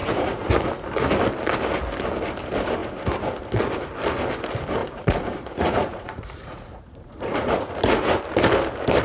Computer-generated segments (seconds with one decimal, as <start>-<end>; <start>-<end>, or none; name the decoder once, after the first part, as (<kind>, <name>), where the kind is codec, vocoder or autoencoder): 0.0-0.5 (vocoder, Vocos); 4.8-8.1